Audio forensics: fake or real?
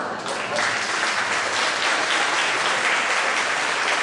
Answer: real